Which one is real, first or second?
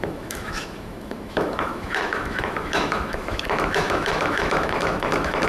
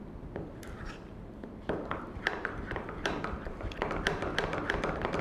second